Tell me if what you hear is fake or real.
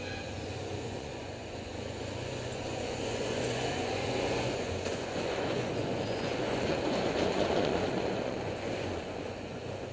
fake